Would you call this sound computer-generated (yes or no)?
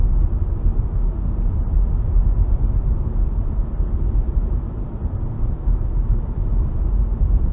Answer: no